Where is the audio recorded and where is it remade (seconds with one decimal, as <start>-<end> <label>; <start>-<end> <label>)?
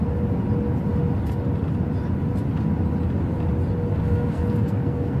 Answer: 0.0-3.9 recorded; 3.9-5.2 remade